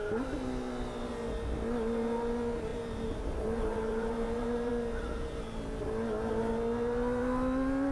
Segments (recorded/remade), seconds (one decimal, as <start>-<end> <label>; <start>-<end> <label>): 0.0-2.7 recorded; 2.7-4.7 remade; 4.7-7.9 recorded